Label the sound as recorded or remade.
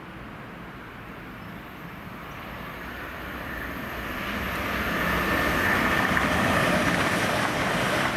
recorded